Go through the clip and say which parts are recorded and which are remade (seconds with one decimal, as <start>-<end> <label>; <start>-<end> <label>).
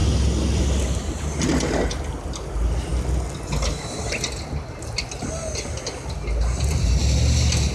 0.0-7.7 recorded